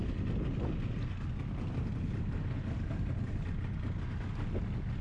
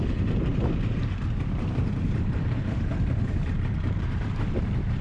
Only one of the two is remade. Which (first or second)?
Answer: second